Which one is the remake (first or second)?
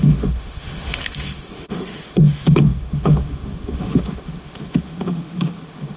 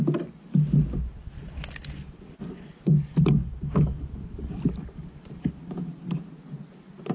first